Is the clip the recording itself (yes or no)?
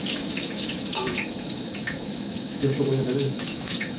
no